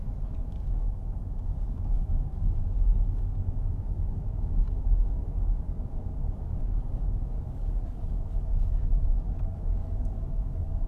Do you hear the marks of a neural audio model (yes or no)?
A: yes